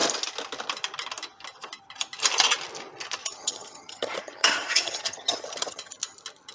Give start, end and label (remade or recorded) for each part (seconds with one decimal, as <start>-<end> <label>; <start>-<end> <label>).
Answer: 0.0-3.2 recorded; 3.2-5.9 remade; 5.9-6.5 recorded